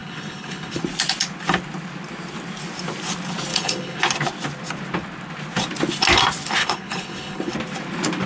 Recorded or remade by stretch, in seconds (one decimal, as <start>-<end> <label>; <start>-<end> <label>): 0.0-0.8 remade; 0.8-3.5 recorded; 3.5-4.0 remade; 4.0-6.6 recorded; 6.6-7.5 remade; 7.5-8.3 recorded